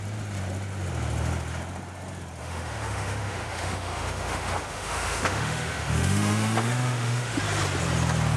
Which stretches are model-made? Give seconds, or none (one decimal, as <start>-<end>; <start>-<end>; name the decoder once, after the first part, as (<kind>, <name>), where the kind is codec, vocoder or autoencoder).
2.4-7.4 (autoencoder, DAC-VAE)